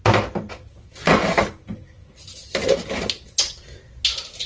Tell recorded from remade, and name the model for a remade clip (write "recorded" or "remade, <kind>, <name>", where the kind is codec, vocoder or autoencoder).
recorded